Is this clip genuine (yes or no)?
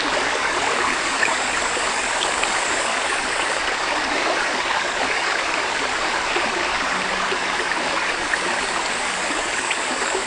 no